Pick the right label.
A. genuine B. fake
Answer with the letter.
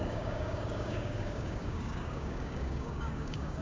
B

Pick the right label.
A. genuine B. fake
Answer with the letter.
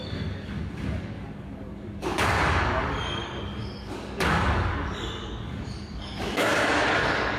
B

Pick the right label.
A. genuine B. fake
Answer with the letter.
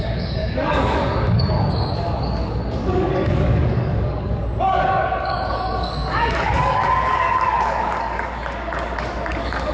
B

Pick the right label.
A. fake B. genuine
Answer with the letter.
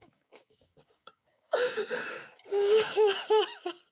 A